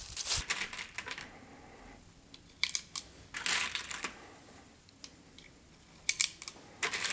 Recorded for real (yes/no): yes